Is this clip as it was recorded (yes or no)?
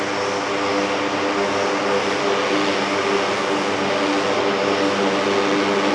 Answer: yes